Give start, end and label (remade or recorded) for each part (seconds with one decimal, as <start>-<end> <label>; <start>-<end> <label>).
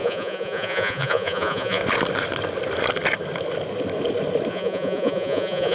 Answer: 0.0-1.8 remade; 1.8-4.5 recorded; 4.5-5.7 remade